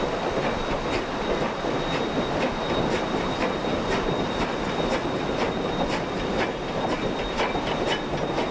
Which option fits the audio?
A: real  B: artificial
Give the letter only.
A